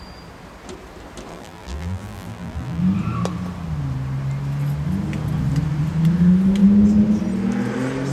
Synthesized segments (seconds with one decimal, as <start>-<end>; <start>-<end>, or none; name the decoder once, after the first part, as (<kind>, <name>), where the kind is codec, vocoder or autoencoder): 1.3-2.8 (vocoder, BigVGAN v2)